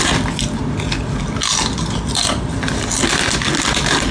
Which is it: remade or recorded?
recorded